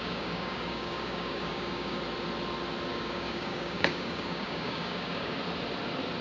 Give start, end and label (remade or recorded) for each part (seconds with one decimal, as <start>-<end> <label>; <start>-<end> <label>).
0.0-2.0 remade; 2.0-2.9 recorded; 2.9-5.4 remade; 5.4-6.2 recorded